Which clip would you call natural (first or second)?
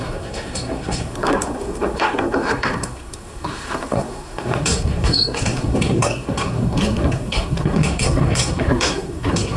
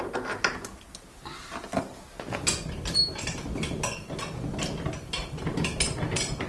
second